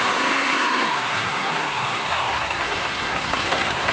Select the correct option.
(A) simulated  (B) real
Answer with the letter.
A